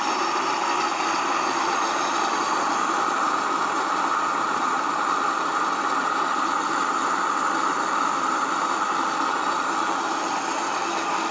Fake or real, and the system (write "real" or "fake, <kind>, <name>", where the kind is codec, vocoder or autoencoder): real